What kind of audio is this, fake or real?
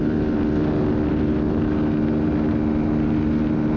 real